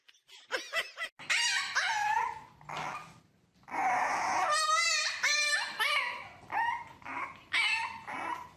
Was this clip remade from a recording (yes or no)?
no